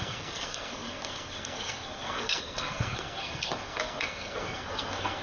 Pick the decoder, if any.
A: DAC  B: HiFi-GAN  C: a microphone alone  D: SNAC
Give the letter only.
D